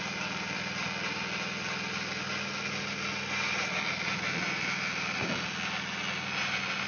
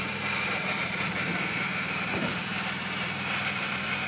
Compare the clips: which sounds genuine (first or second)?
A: first